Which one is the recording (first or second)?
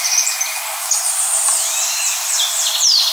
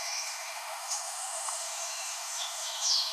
first